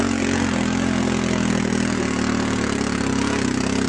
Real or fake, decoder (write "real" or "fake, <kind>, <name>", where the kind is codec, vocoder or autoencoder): real